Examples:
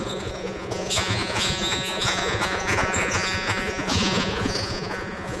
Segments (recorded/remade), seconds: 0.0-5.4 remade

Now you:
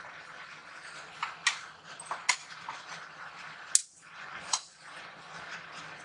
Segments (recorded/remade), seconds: 0.0-3.8 recorded; 3.8-5.4 remade; 5.4-6.0 recorded

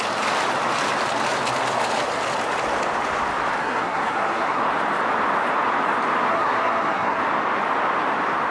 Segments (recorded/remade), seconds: 0.0-3.6 recorded; 3.6-4.6 remade; 4.6-6.3 recorded; 6.3-7.2 remade; 7.2-8.5 recorded

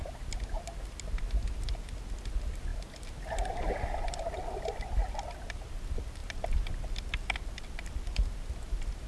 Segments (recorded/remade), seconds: 0.0-9.1 recorded

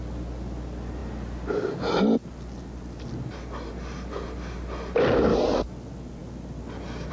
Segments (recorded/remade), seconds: 0.0-7.1 recorded